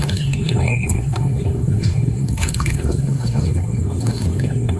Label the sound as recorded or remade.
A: remade